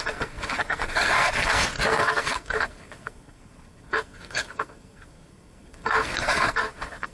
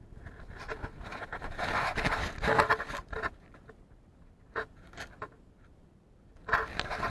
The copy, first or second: first